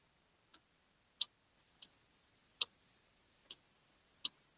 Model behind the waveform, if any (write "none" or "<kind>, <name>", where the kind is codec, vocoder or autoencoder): none